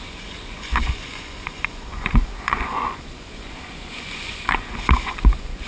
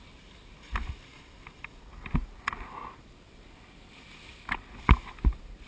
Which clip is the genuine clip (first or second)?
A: second